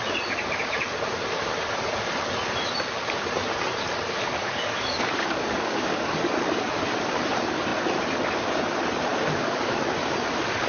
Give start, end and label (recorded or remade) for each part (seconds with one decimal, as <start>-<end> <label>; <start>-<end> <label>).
0.0-4.4 recorded; 4.4-6.2 remade; 6.2-9.1 recorded; 9.1-9.8 remade; 9.8-10.7 recorded